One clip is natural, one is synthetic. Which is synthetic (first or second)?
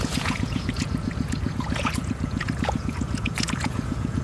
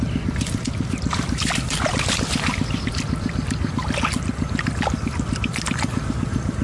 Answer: first